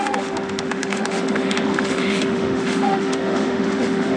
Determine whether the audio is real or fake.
fake